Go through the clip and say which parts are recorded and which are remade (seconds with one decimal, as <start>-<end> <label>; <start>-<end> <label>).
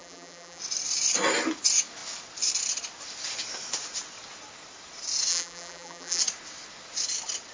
0.0-0.6 remade; 0.6-5.3 recorded; 5.3-6.2 remade; 6.2-7.5 recorded